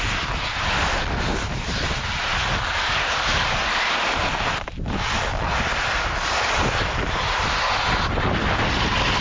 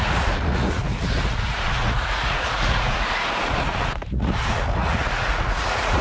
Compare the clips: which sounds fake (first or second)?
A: second